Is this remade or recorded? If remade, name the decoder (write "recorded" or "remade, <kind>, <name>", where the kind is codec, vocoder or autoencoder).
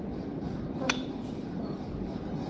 recorded